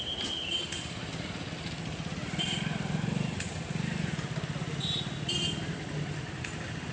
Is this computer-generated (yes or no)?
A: no